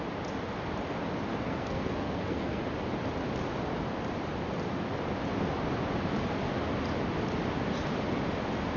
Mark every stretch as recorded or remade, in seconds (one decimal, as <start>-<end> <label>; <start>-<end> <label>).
0.0-1.3 recorded; 1.3-2.6 remade; 2.6-8.8 recorded